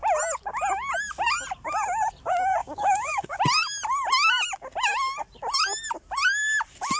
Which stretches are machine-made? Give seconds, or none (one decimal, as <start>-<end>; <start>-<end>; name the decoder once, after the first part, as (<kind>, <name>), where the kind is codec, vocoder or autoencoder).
2.6-3.4 (codec, DAC)

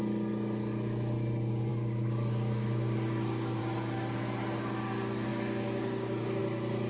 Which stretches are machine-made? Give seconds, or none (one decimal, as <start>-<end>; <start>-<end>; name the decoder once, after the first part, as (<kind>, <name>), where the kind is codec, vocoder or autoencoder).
1.7-3.6 (codec, DAC); 5.3-6.4

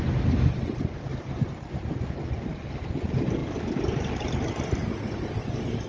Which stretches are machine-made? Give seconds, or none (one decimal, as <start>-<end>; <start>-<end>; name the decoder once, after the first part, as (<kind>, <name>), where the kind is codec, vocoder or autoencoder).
none

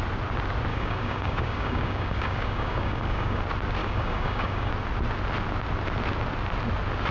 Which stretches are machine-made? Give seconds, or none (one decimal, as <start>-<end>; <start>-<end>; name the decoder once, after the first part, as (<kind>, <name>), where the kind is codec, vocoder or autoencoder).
0.7-3.4 (codec, DAC); 3.8-4.7